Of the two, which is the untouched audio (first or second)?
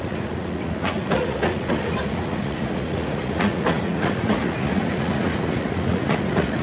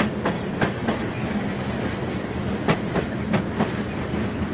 second